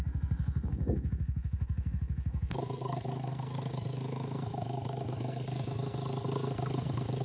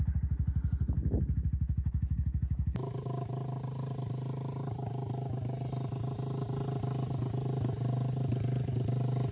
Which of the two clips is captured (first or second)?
second